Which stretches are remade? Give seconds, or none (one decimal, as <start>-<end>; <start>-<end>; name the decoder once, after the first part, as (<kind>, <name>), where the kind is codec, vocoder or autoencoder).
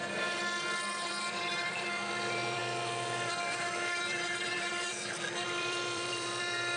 1.2-2.6 (vocoder, BigVGAN v2); 4.0-6.8